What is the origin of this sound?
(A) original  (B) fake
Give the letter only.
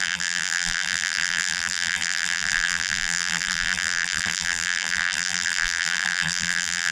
B